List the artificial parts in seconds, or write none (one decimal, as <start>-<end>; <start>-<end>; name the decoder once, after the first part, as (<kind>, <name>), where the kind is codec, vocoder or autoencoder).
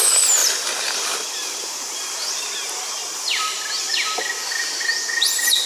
0.4-3.8 (vocoder, BigVGAN v2)